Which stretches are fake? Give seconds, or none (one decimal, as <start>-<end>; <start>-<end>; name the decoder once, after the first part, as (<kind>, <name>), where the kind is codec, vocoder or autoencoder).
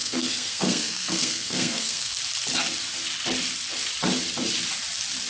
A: 0.0-2.2 (codec, SNAC)